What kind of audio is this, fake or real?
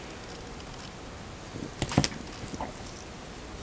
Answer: real